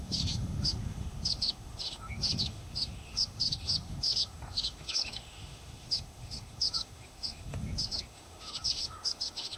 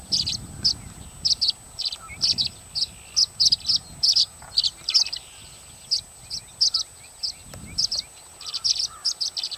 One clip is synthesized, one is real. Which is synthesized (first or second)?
first